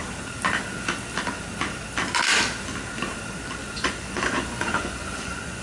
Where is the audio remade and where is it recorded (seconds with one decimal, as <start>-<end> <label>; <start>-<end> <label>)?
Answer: 0.0-3.6 recorded; 3.6-5.6 remade